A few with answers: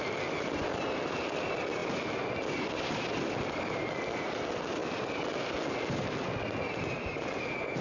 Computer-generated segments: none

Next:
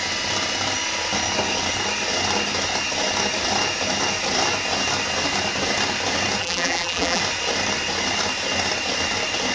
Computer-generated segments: 6.4-7.2

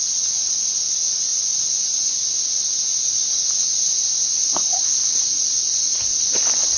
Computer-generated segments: none

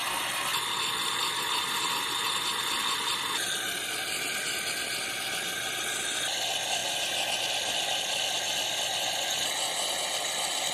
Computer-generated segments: none

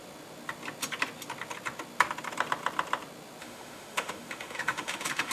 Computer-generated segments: 3.4-5.3

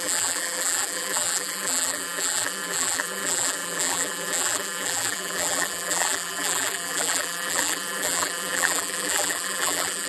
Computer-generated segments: 0.0-10.1